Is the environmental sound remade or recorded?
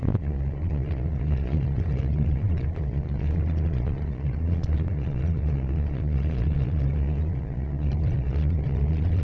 remade